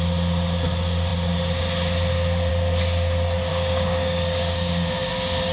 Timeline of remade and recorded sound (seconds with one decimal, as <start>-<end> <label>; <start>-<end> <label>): 0.0-3.5 recorded; 3.5-5.1 remade; 5.1-5.5 recorded